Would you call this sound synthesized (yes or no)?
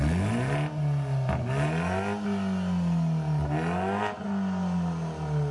no